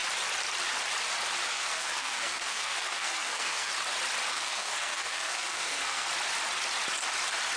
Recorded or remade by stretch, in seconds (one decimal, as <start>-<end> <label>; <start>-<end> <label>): 0.0-1.5 recorded; 1.5-3.7 remade; 3.7-4.3 recorded; 4.3-6.1 remade; 6.1-7.6 recorded